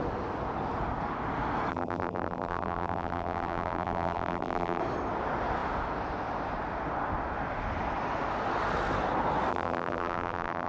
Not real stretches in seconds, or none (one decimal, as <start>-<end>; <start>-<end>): 1.7-4.8; 9.5-10.7